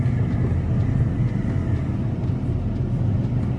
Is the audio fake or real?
real